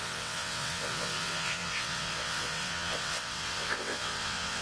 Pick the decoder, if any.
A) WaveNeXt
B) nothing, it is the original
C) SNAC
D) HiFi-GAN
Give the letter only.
A